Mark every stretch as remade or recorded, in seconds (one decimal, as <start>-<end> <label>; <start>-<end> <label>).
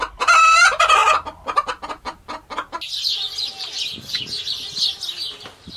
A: 0.0-5.8 recorded